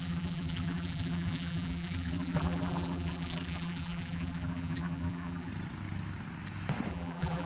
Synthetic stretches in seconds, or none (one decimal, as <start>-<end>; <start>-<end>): 0.0-5.5; 6.9-7.5